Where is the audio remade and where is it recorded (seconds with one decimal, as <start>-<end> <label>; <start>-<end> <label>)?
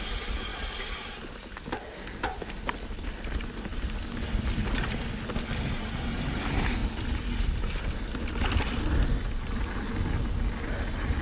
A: 0.0-11.2 recorded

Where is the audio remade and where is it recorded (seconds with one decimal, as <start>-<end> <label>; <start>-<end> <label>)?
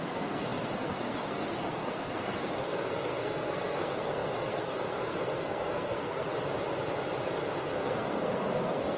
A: 0.0-6.3 remade; 6.3-7.6 recorded; 7.6-9.0 remade